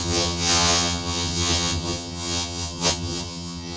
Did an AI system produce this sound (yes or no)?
yes